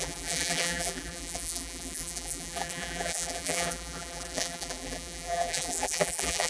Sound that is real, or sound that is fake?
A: fake